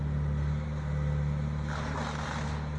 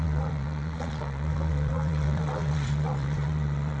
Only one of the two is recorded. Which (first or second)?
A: first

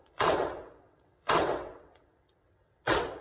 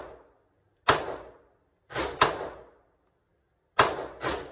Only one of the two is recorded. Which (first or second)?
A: second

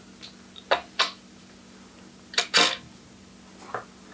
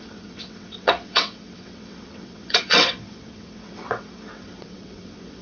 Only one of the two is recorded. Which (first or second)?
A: first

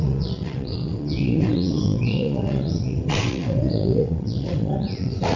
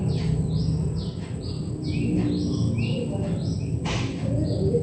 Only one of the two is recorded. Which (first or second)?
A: second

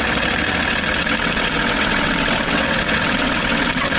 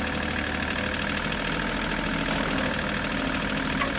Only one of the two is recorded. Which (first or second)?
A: second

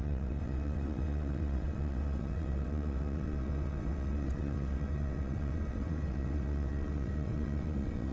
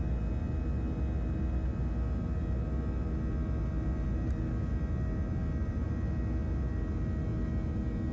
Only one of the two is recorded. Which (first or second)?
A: second